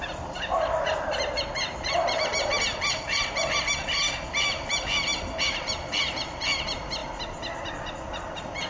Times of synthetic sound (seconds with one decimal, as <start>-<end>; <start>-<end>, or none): none